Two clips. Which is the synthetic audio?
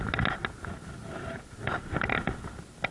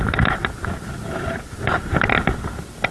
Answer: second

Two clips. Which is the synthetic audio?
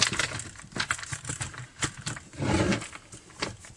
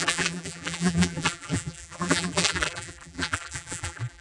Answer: second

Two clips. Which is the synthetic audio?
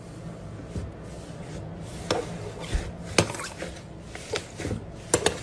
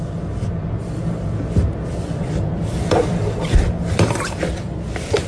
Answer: second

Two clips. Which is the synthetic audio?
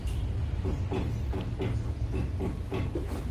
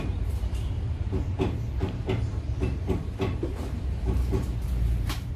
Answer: second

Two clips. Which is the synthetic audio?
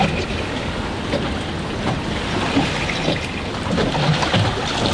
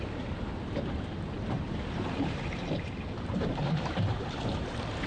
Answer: second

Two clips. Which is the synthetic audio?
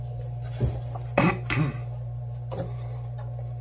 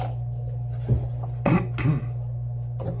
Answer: first